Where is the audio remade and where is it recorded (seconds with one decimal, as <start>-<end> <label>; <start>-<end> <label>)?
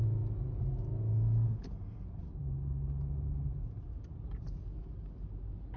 0.0-5.8 recorded